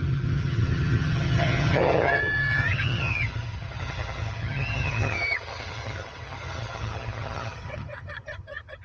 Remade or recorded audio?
remade